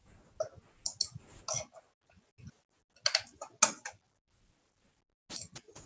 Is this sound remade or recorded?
recorded